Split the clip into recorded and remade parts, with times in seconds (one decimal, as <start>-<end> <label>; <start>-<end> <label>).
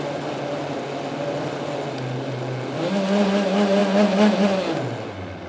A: 0.0-5.5 recorded